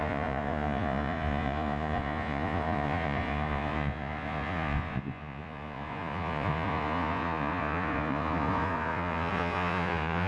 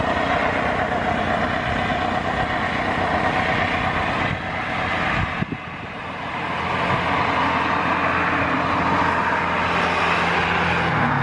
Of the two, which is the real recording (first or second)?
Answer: second